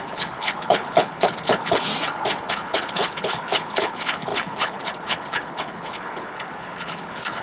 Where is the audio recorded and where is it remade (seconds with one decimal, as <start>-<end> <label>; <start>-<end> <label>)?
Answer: 0.0-1.9 remade; 1.9-2.5 recorded; 2.5-7.4 remade